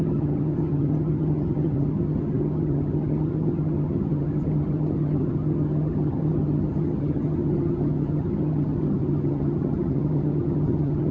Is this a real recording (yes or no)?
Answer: no